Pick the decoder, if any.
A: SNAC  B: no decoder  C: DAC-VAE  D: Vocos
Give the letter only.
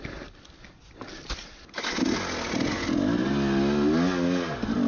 B